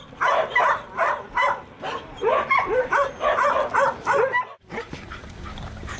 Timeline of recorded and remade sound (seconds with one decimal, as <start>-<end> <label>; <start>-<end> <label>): 0.0-6.0 remade